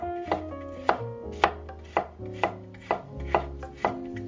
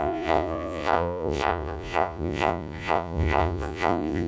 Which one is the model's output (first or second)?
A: second